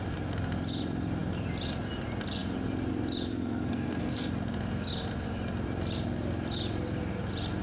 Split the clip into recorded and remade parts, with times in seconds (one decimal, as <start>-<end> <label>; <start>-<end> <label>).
0.0-3.3 recorded; 3.3-4.3 remade; 4.3-7.6 recorded